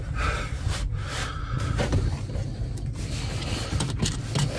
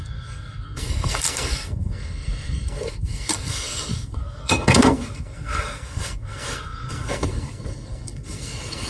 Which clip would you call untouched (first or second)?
first